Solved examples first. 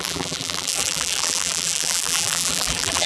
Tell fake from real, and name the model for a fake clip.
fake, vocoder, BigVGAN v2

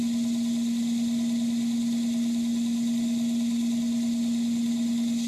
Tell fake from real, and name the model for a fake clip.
real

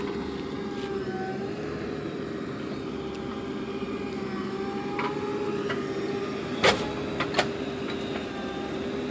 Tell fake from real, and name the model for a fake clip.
real